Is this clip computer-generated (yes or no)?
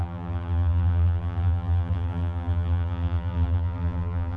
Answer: yes